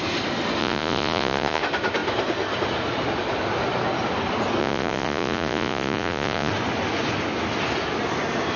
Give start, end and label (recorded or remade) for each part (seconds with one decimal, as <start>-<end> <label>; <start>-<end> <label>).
0.0-0.6 recorded; 0.6-1.6 remade; 1.6-4.6 recorded; 4.6-6.5 remade; 6.5-8.6 recorded